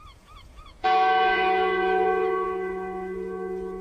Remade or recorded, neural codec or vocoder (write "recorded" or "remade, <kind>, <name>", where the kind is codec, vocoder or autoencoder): remade, vocoder, Vocos